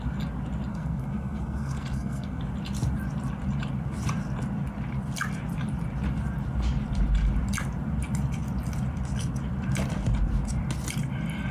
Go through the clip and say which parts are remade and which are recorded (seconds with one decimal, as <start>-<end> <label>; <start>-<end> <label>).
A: 0.0-0.7 recorded; 0.7-2.4 remade; 2.4-11.5 recorded